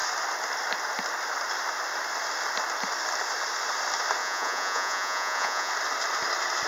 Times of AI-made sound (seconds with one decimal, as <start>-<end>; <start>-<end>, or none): 4.2-5.7